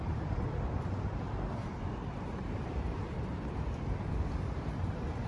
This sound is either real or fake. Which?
fake